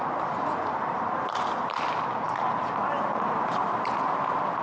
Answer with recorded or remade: remade